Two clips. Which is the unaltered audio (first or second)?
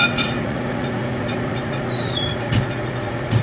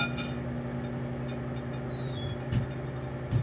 second